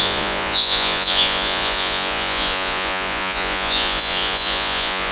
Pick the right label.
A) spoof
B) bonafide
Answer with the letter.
A